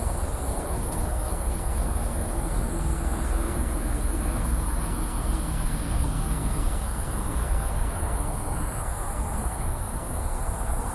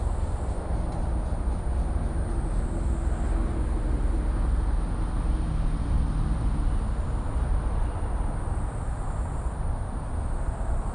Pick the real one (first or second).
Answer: second